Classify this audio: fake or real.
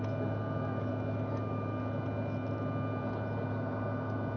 real